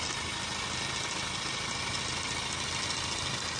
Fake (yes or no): no